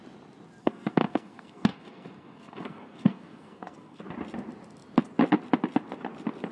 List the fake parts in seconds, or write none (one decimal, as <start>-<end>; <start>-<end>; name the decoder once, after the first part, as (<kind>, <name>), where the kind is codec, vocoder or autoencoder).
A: 0.6-4.0 (codec, SNAC)